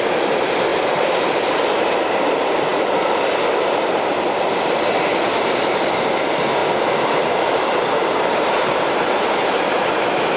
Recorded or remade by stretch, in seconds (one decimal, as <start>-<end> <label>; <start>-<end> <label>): 0.0-10.4 remade